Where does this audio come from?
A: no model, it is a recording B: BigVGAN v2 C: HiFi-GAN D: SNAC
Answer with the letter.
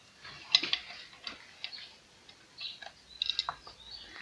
A